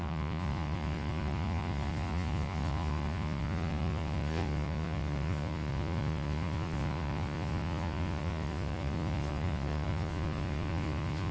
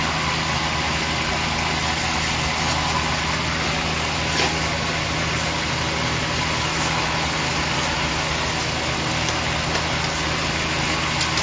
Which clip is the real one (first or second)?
second